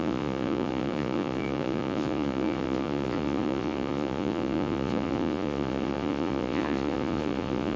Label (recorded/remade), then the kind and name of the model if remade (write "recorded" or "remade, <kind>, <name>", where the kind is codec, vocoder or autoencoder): remade, vocoder, Vocos